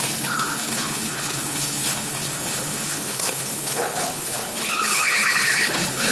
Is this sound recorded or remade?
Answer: remade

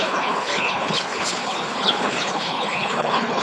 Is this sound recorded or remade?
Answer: remade